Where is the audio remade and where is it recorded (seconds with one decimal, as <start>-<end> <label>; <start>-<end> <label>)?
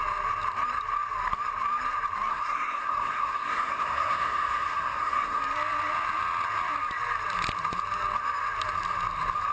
0.0-2.3 recorded; 2.3-5.4 remade; 5.4-9.5 recorded